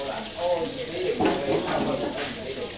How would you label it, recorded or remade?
recorded